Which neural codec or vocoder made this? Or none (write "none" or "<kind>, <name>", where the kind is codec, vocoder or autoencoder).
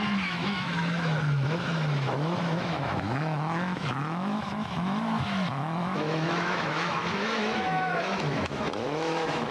autoencoder, DAC-VAE